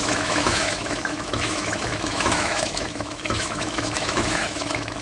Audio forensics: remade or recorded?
remade